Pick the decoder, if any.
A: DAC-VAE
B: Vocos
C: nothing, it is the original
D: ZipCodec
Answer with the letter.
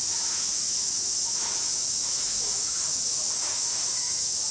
A